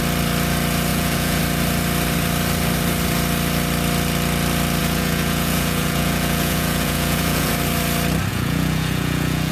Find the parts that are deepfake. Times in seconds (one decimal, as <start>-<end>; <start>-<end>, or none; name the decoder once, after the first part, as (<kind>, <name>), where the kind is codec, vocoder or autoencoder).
0.9-1.4 (vocoder, Vocos); 4.8-7.5; 8.3-9.5